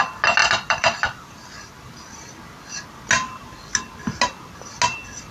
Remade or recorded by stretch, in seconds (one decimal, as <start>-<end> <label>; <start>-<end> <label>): 0.0-0.4 recorded; 0.4-2.3 remade; 2.3-5.3 recorded